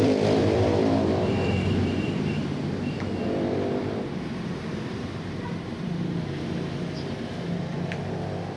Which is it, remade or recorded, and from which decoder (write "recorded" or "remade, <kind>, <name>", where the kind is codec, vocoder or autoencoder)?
remade, vocoder, BigVGAN v2